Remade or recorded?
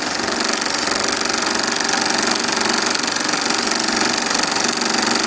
recorded